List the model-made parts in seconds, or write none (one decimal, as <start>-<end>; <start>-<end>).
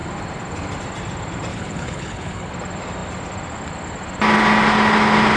1.5-2.5